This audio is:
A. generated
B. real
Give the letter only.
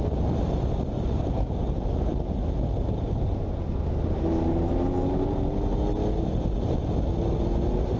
B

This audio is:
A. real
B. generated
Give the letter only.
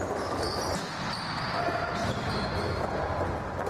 A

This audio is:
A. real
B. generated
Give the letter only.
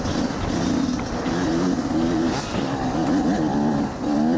A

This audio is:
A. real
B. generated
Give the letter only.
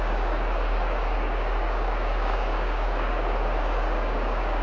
B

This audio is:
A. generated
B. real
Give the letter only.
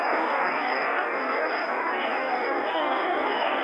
A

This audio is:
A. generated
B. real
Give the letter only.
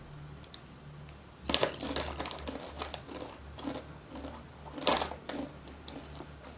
B